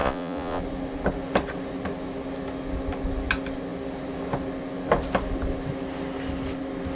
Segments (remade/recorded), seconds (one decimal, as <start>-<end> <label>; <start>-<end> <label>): 0.0-0.6 remade; 0.6-7.0 recorded